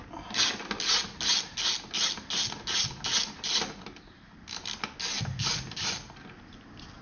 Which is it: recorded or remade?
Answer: recorded